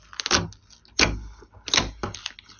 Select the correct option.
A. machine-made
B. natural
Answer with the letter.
B